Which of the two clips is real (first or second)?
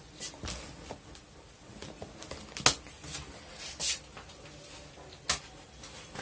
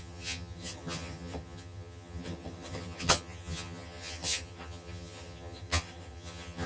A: first